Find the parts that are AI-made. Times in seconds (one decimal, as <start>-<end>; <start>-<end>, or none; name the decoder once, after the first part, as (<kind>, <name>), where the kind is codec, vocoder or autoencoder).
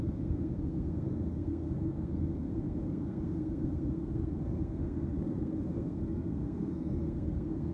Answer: 0.0-7.7 (codec, SNAC)